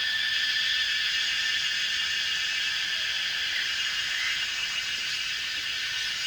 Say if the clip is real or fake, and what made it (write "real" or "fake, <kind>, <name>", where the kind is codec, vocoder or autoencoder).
real